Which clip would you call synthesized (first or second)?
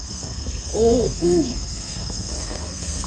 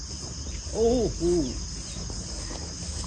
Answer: first